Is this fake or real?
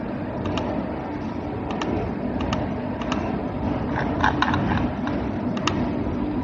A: real